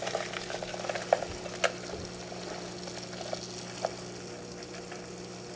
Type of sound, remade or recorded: recorded